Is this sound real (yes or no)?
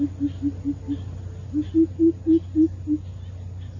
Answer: yes